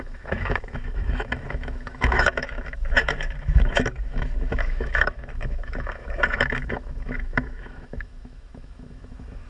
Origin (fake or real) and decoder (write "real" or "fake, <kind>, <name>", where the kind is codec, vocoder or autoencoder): fake, autoencoder, DAC-VAE